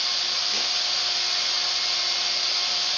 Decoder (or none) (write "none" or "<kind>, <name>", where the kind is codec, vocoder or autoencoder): none